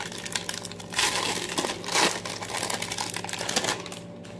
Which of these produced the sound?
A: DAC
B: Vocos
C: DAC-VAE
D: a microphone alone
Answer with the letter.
D